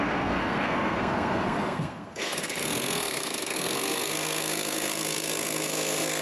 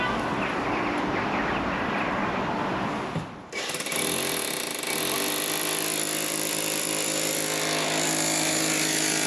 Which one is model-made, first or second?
first